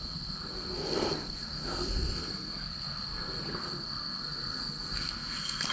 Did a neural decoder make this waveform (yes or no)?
yes